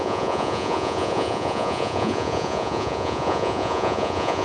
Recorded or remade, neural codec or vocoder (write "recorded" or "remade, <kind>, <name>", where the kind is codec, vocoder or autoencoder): remade, vocoder, Vocos